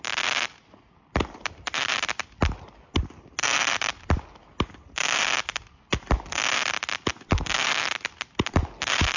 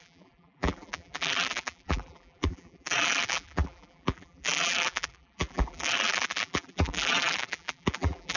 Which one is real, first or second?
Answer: first